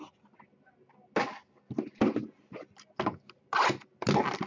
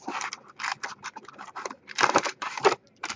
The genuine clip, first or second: first